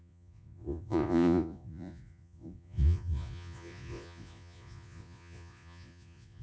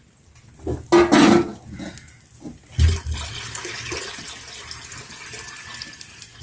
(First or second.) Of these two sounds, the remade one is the first